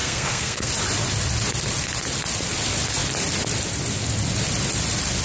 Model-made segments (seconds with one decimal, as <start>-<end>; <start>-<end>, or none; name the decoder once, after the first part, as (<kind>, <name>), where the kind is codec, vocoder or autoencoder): 0.0-0.7 (codec, SNAC)